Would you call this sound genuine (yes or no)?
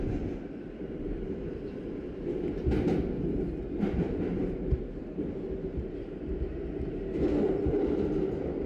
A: yes